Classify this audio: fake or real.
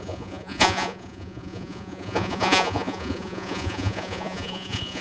fake